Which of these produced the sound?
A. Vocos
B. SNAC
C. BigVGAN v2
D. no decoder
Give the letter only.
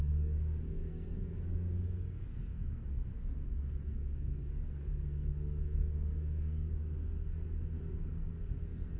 B